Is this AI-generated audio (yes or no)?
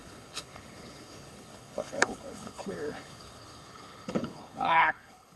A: yes